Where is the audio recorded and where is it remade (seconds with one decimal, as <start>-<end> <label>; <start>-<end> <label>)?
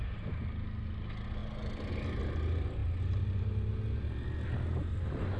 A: 0.0-5.4 recorded